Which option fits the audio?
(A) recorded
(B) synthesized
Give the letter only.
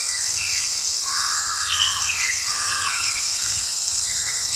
B